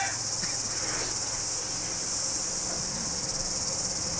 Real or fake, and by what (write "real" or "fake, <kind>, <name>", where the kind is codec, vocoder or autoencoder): real